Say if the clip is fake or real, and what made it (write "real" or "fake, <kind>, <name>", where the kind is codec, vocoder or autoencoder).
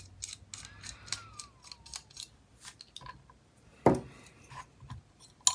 real